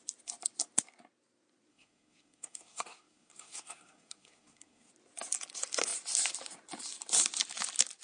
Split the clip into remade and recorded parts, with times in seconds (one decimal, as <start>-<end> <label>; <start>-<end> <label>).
0.0-1.7 recorded; 1.7-4.9 remade; 4.9-8.0 recorded